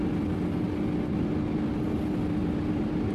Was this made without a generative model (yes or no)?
yes